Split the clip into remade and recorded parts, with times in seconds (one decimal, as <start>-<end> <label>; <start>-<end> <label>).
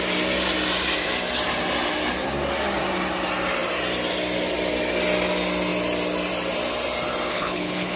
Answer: 0.0-7.3 recorded; 7.3-8.0 remade